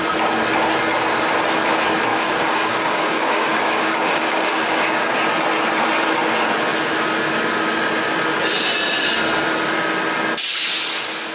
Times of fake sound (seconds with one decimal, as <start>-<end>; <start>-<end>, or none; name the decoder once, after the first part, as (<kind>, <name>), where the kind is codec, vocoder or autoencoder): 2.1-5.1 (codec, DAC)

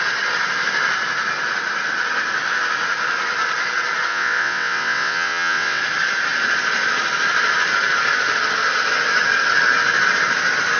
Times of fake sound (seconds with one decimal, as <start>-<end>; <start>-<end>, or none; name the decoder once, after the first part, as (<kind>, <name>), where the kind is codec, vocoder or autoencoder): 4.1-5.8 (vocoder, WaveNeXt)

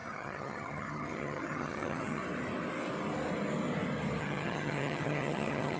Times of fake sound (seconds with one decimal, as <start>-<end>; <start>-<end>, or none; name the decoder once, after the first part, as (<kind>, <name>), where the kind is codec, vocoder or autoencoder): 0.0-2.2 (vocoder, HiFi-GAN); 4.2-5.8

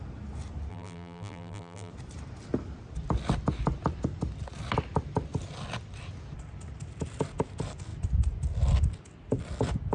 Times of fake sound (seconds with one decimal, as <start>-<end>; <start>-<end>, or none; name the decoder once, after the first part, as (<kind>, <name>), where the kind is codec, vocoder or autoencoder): 0.7-1.9 (vocoder, BigVGAN v2)